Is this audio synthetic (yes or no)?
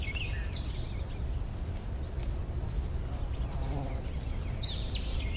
no